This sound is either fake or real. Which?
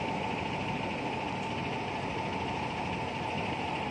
real